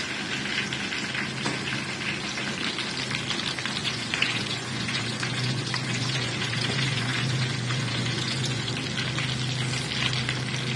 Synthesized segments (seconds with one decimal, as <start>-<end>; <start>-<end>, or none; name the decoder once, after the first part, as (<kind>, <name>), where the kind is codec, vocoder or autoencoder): 3.8-8.7 (vocoder, Vocos)

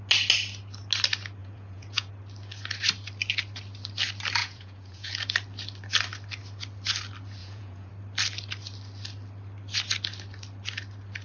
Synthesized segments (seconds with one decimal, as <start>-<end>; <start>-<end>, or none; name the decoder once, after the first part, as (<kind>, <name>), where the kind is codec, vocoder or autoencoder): 1.4-2.1 (vocoder, Vocos); 4.4-5.1; 7.4-7.9

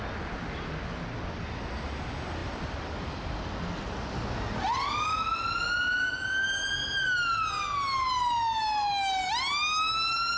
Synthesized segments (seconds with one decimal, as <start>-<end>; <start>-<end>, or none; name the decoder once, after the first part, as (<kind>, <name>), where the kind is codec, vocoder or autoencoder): none

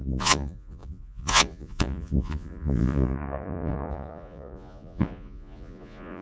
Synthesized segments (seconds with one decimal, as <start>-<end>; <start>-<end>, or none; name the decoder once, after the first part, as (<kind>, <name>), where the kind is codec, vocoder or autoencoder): 0.0-6.2 (vocoder, Vocos)

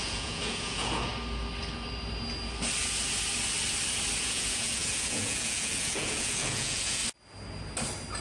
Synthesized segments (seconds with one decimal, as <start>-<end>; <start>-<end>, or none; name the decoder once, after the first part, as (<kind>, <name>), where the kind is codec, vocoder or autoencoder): 0.0-1.1 (vocoder, Vocos); 4.2-7.0